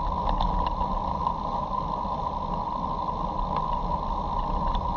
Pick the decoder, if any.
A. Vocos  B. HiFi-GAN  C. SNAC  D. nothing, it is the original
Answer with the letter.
D